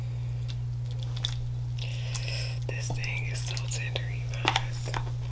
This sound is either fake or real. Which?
real